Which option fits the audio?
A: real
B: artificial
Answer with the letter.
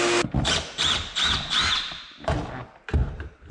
A